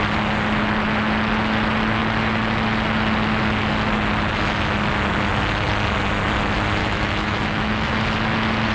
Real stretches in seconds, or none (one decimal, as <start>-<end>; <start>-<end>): 0.0-6.8; 7.9-8.7